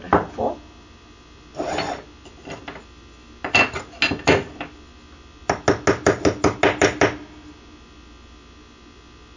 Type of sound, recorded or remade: recorded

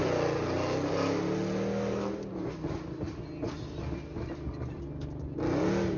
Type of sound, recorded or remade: recorded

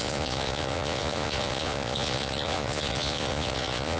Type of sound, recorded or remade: remade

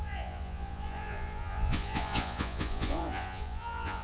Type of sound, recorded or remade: remade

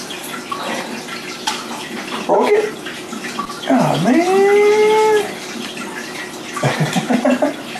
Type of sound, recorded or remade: recorded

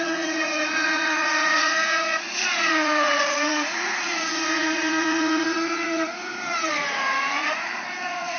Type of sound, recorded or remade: remade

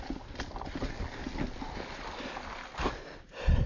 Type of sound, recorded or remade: recorded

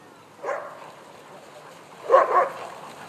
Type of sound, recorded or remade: recorded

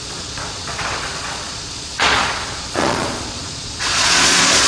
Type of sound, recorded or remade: remade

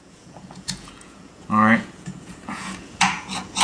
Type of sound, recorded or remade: remade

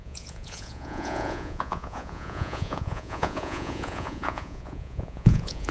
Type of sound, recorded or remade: remade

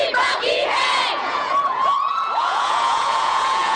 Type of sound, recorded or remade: remade